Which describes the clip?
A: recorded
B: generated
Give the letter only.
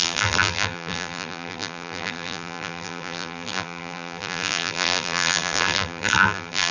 B